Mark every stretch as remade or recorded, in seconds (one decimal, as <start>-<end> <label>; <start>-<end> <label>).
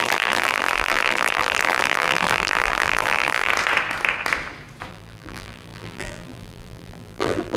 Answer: 0.0-3.5 remade; 3.5-4.9 recorded; 4.9-7.6 remade